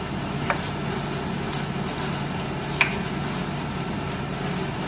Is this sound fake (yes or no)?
no